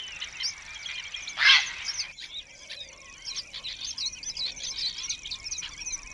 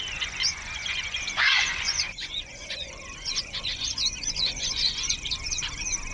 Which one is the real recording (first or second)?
first